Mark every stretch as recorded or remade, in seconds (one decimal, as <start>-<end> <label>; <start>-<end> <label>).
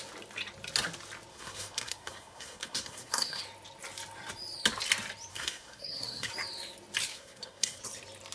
0.0-1.3 recorded; 1.3-3.4 remade; 3.4-5.3 recorded; 5.3-6.3 remade; 6.3-7.1 recorded; 7.1-7.8 remade; 7.8-8.3 recorded